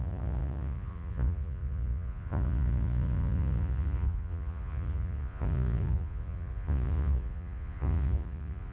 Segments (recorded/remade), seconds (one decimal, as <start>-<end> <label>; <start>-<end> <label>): 0.0-8.7 remade